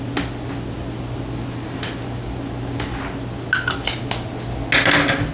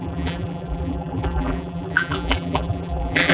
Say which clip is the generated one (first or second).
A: second